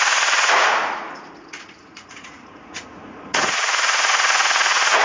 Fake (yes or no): yes